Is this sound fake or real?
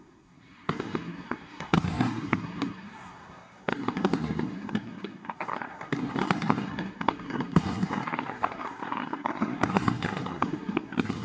fake